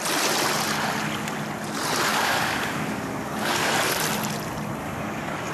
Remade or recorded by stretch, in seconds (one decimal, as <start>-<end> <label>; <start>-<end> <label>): 0.0-2.1 recorded; 2.1-3.7 remade; 3.7-4.8 recorded; 4.8-5.5 remade